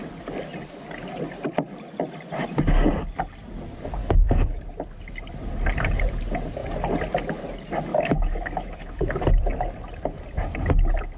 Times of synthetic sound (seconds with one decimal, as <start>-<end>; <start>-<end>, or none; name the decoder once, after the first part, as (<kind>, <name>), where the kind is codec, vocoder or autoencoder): 4.0-4.6 (autoencoder, DAC-VAE); 7.9-9.0